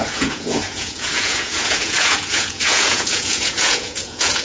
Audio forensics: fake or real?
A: fake